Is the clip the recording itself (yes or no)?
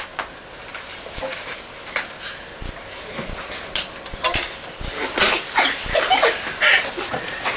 yes